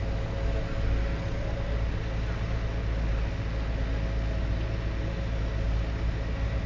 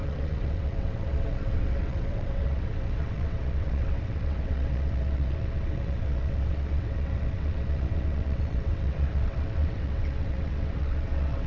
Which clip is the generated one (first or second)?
second